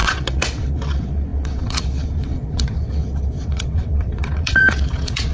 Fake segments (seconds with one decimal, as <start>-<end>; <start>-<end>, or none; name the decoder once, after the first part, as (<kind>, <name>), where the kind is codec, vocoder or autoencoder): 0.0-5.3 (vocoder, WaveNeXt)